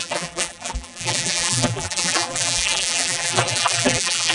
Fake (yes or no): yes